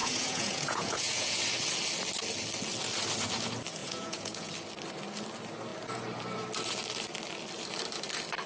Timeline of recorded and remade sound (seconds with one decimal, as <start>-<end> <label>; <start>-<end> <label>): 0.0-1.4 remade; 1.4-3.8 recorded; 3.8-4.5 remade; 4.5-8.5 recorded